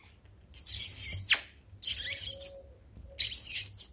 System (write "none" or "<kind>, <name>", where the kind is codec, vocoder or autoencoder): none